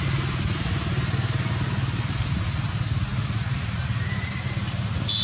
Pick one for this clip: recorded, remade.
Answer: recorded